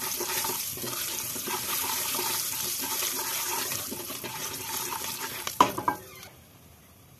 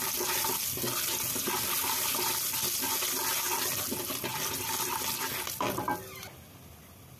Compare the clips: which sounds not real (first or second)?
first